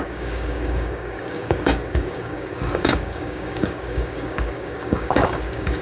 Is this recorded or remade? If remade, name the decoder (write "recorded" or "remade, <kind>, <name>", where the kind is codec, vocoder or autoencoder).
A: remade, codec, DAC